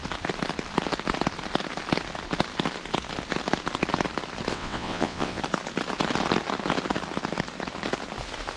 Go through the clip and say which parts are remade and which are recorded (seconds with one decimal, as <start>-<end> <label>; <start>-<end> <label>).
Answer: 0.0-4.5 recorded; 4.5-5.4 remade; 5.4-8.6 recorded